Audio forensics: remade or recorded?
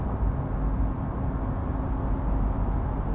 recorded